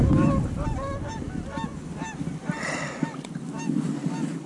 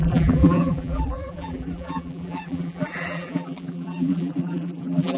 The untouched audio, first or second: first